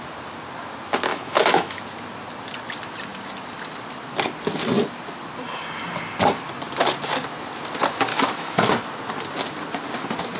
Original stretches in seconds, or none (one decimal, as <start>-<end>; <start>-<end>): 0.0-1.1; 1.8-8.1; 8.7-10.4